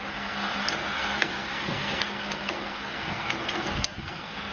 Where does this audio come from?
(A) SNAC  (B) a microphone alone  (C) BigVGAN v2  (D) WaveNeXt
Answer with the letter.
A